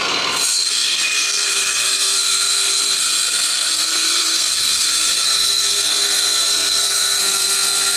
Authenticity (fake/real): fake